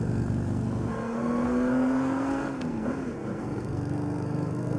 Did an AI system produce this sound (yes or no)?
yes